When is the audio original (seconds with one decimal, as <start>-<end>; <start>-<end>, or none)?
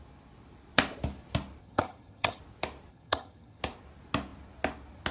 0.0-1.6; 2.4-2.9; 3.6-5.1